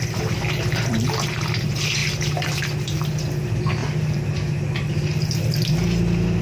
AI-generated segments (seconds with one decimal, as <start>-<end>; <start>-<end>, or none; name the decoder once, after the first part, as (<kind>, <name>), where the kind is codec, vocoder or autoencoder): 0.0-6.4 (vocoder, BigVGAN v2)